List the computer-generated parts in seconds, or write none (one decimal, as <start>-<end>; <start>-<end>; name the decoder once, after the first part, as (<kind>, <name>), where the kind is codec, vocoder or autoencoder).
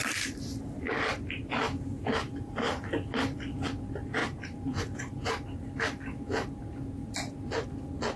2.2-2.8 (vocoder, BigVGAN v2); 4.2-5.6